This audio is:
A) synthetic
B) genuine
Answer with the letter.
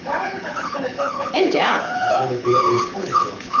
A